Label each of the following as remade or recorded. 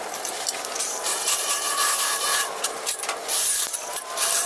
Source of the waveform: remade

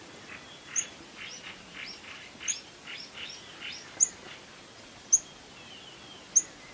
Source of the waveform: recorded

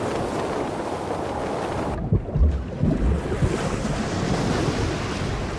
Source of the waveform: recorded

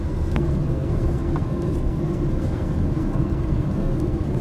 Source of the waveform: remade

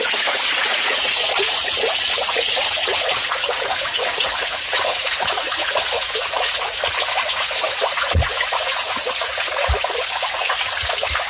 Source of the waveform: remade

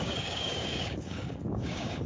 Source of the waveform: remade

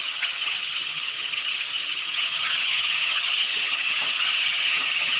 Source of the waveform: remade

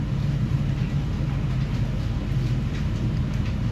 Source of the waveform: recorded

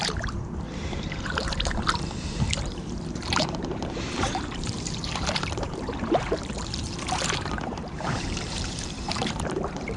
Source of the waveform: remade